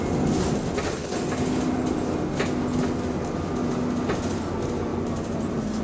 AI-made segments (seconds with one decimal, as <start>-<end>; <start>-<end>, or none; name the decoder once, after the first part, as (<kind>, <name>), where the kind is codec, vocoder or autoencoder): 4.9-5.8 (vocoder, BigVGAN v2)